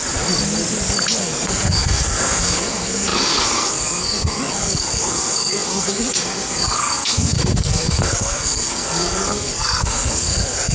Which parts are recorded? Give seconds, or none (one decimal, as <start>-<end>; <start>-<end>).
0.0-1.2